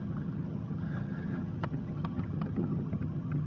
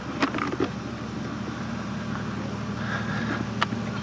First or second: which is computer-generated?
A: first